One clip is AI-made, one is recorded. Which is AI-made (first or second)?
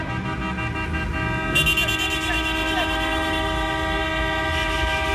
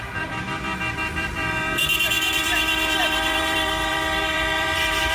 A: second